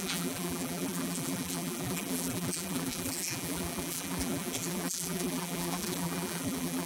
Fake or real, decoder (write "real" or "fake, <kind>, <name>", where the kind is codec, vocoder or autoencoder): fake, vocoder, BigVGAN v2